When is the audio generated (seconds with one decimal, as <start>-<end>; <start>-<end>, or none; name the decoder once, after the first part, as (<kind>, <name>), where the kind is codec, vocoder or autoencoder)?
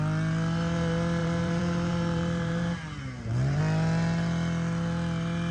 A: 1.2-3.6 (vocoder, BigVGAN v2)